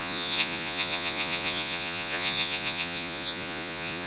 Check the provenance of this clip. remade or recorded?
remade